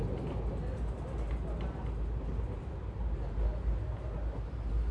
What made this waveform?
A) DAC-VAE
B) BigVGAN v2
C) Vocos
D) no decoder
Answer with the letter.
D